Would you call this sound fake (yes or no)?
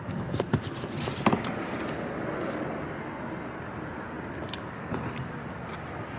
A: no